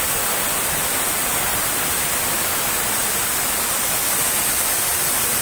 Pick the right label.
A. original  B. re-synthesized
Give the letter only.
B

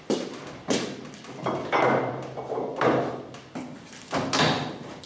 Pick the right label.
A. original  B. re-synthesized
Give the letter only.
A